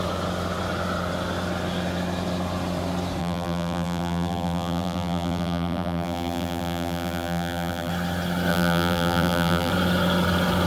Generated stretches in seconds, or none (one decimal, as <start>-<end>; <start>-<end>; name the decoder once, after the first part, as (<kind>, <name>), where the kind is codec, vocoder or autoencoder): 3.2-7.9 (vocoder, BigVGAN v2); 8.5-9.7